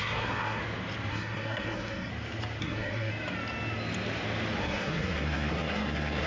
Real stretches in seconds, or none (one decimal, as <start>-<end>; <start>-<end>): 0.6-1.1; 2.1-2.6; 3.1-4.6